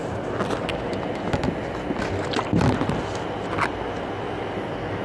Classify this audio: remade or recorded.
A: recorded